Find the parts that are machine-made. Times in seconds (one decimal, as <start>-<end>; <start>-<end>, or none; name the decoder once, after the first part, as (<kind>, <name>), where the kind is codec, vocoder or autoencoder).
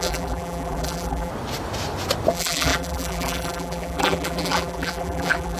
0.0-1.3 (vocoder, BigVGAN v2); 2.3-5.6